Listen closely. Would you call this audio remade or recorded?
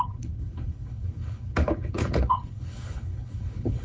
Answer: remade